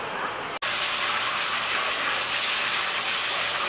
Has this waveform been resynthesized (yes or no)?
no